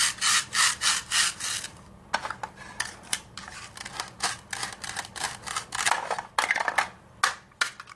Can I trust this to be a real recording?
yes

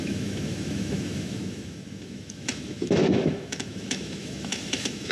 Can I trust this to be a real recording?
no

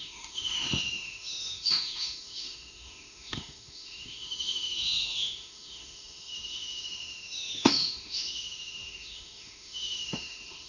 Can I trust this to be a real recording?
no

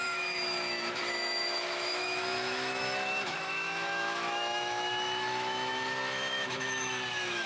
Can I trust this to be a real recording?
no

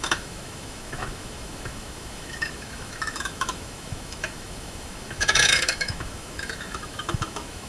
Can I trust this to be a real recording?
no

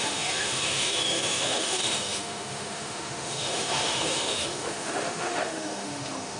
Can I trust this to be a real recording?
no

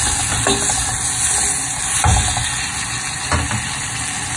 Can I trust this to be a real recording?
yes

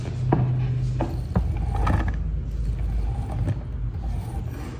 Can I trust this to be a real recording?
yes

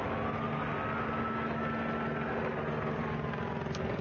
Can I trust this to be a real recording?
yes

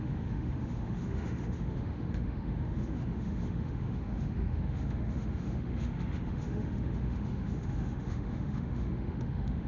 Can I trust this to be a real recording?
no